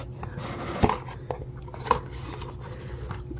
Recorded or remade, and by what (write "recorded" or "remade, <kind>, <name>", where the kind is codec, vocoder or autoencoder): recorded